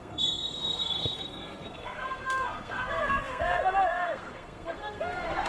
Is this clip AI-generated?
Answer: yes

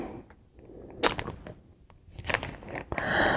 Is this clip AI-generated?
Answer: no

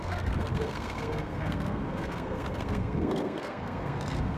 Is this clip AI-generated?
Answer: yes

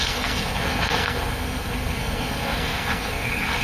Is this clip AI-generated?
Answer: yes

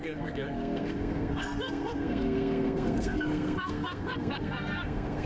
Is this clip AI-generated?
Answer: yes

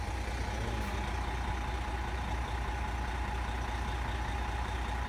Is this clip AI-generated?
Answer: no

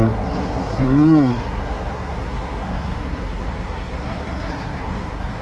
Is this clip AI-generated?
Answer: yes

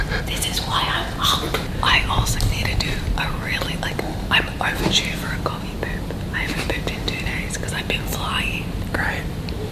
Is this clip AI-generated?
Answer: no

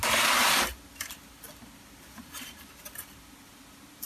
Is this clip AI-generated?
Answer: no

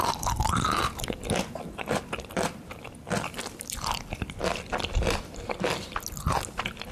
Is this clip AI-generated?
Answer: no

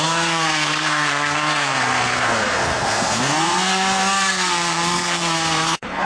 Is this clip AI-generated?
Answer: yes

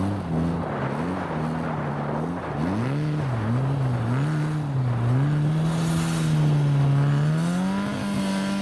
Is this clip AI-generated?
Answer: no